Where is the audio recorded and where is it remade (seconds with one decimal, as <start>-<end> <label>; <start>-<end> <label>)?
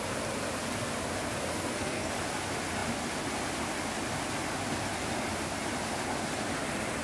0.0-1.5 recorded; 1.5-2.1 remade; 2.1-7.0 recorded